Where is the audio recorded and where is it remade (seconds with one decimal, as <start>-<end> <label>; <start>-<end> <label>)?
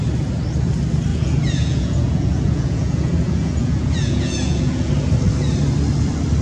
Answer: 0.0-1.1 recorded; 1.1-4.9 remade; 4.9-6.4 recorded